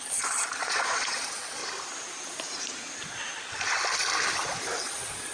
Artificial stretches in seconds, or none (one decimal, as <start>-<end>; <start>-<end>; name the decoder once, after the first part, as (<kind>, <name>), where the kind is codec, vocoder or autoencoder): 0.0-1.6 (vocoder, Vocos); 4.8-5.3